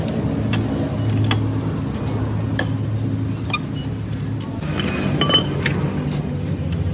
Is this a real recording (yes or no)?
yes